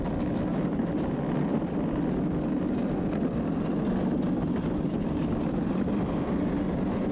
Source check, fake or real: real